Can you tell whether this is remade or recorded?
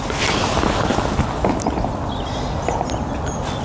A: recorded